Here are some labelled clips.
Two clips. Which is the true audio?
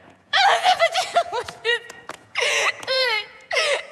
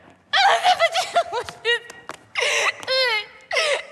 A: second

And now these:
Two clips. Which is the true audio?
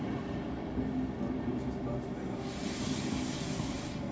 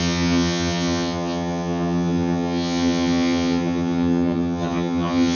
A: first